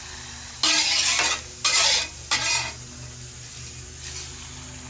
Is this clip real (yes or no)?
yes